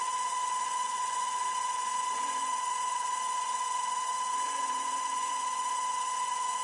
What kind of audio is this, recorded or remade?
remade